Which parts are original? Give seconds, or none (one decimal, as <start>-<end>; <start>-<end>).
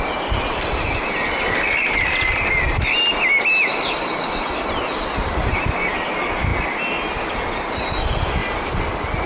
0.0-9.3